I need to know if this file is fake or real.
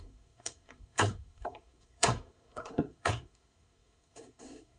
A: fake